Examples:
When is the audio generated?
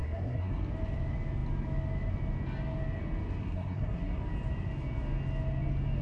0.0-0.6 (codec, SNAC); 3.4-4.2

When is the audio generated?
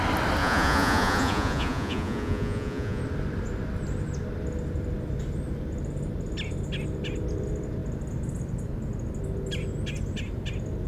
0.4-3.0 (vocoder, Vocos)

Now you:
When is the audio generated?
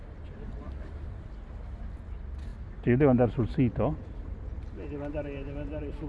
none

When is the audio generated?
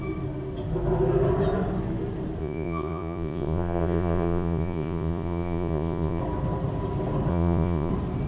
2.4-6.2 (vocoder, Vocos); 7.3-7.9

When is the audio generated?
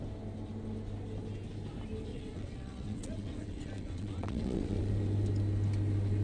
2.1-4.9 (vocoder, WaveNeXt)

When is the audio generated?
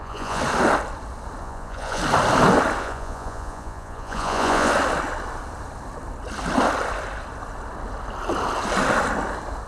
0.0-0.4 (vocoder, Vocos); 1.4-2.0; 2.8-4.7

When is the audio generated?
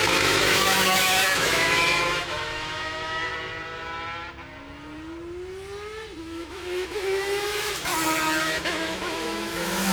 0.0-3.3 (autoencoder, DAC-VAE); 6.2-7.9; 8.4-9.9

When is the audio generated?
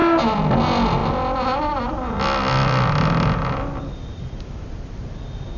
none